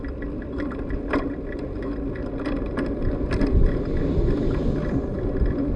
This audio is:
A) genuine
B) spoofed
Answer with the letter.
A